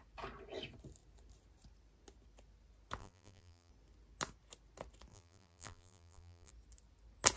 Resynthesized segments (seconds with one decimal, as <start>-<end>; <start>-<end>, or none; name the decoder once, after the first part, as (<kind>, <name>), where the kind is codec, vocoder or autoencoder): 3.0-3.7 (vocoder, BigVGAN v2); 5.1-6.5